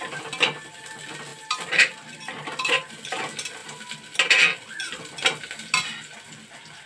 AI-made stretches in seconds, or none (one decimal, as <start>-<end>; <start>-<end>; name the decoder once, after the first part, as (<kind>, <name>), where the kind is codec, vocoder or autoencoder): none